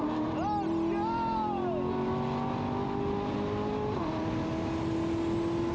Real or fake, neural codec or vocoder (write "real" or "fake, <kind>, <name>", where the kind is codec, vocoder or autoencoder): real